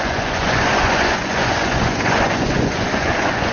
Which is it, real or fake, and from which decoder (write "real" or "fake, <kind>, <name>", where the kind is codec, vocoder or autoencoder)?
fake, vocoder, Vocos